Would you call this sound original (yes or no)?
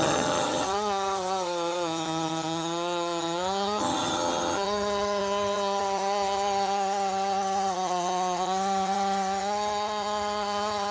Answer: no